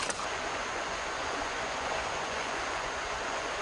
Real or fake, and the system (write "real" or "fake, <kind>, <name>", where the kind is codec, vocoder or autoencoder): fake, vocoder, Vocos